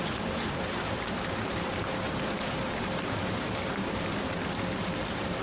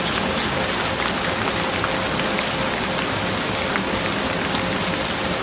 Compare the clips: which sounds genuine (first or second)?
second